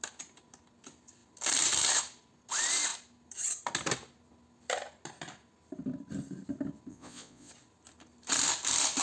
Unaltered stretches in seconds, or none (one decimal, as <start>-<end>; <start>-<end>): 0.0-6.9; 7.5-9.0